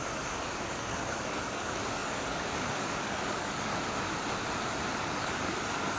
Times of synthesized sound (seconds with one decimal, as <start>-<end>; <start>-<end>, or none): 0.0-3.7; 5.0-6.0